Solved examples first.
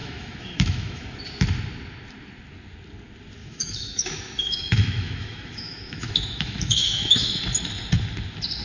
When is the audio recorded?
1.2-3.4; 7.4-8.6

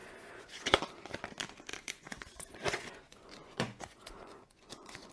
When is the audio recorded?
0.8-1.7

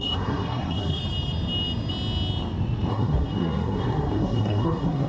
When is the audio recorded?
1.0-2.9

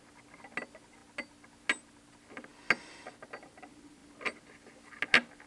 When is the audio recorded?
0.0-5.5

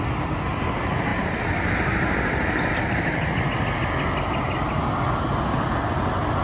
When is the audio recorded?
0.0-6.4